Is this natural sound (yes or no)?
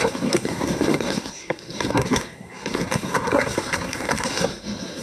no